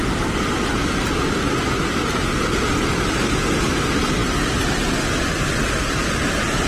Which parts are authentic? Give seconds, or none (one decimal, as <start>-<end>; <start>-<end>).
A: 0.0-6.7